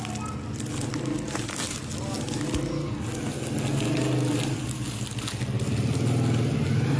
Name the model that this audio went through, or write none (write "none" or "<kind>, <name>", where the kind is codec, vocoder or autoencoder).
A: none